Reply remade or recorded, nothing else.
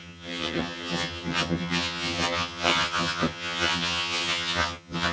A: remade